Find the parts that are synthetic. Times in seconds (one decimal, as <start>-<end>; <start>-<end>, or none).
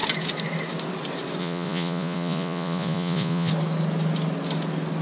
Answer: 1.4-3.5